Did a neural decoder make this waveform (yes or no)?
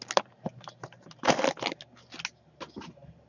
no